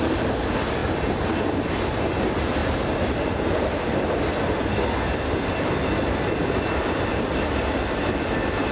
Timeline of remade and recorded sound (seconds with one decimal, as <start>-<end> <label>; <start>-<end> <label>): 0.0-8.7 recorded